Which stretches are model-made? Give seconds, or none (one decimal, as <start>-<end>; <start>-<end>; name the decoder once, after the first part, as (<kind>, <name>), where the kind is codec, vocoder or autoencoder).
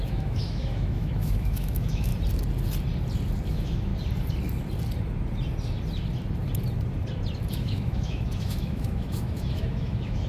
0.0-2.1 (autoencoder, DAC-VAE); 3.5-3.9; 7.5-10.3